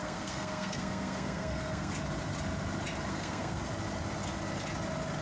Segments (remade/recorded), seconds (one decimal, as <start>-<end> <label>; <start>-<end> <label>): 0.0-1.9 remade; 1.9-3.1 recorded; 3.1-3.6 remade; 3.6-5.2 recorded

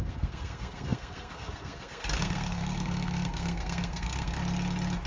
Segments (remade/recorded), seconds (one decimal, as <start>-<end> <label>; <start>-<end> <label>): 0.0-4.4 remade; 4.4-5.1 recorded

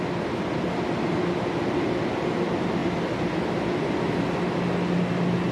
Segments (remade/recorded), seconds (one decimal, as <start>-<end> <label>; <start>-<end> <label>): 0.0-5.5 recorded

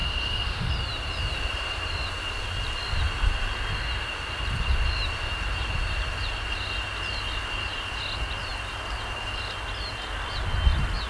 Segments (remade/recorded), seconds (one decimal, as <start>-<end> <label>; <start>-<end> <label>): 0.0-0.7 remade; 0.7-11.1 recorded

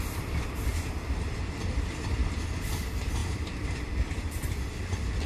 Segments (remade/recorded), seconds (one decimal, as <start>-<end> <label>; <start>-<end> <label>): 0.0-0.7 remade; 0.7-1.4 recorded; 1.4-5.3 remade